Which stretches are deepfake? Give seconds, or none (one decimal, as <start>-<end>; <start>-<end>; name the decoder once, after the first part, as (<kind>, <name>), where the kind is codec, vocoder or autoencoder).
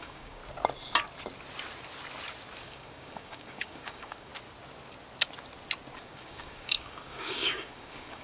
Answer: 0.0-0.4 (codec, DAC); 2.6-4.3; 6.0-8.2